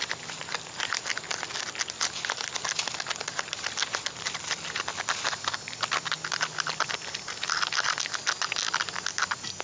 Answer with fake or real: real